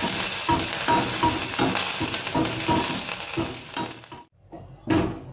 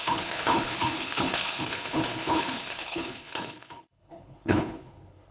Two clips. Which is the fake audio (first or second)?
second